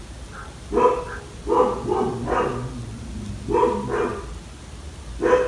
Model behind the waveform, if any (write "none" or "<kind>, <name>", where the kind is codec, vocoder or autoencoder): none